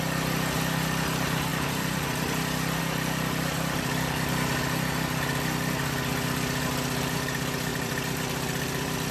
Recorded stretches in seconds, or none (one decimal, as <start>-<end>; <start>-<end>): 0.0-1.5; 2.8-7.7